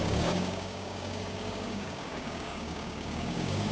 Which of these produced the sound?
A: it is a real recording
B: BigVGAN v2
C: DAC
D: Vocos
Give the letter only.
C